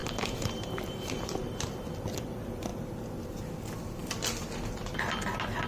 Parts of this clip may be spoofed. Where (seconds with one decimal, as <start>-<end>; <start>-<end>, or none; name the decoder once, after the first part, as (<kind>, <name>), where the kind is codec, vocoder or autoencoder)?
0.0-1.7 (vocoder, BigVGAN v2)